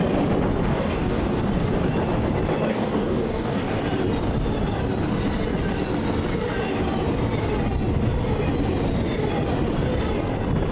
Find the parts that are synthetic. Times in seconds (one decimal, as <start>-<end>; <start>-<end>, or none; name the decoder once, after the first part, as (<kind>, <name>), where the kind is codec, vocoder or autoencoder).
0.7-1.4 (codec, DAC); 2.7-3.8